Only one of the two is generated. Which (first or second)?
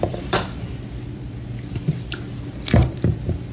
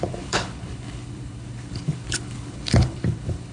second